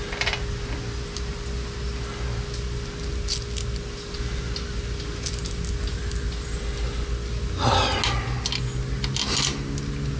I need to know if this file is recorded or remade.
recorded